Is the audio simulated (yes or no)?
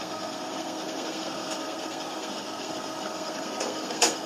yes